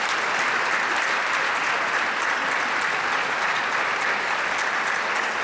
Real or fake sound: real